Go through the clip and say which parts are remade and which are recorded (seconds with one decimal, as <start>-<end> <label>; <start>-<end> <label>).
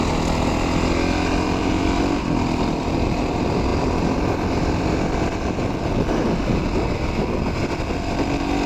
0.0-8.7 recorded